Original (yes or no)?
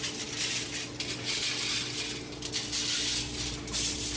yes